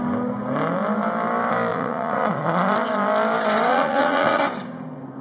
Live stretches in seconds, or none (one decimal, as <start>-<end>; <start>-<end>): 0.0-1.7; 2.3-3.7; 4.4-5.2